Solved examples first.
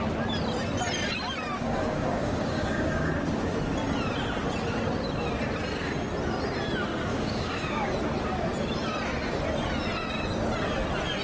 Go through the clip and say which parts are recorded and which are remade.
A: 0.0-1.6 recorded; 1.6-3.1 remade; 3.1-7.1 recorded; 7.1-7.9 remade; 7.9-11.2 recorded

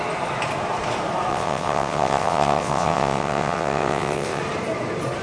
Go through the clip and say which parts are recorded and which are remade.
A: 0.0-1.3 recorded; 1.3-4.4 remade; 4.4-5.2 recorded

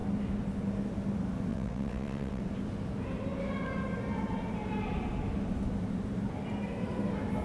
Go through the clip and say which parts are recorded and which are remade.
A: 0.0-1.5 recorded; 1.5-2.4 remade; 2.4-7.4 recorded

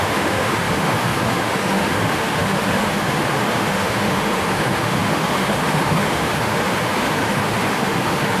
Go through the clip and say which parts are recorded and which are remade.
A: 0.0-8.4 remade

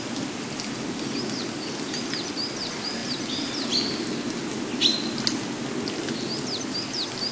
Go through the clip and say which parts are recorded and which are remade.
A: 0.0-7.3 recorded

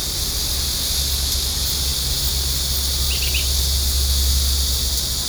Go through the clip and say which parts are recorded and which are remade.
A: 0.0-5.3 recorded